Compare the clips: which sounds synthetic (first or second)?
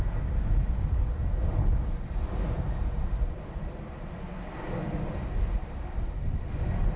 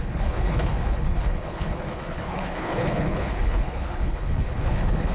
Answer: second